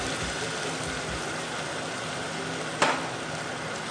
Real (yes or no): yes